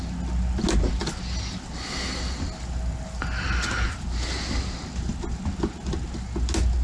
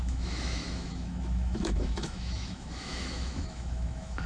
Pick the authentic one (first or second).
first